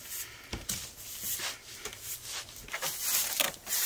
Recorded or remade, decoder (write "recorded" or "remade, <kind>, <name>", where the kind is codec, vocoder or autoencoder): recorded